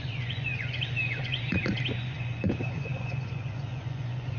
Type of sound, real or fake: fake